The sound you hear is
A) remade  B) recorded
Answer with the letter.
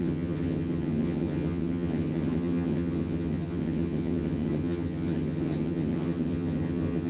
A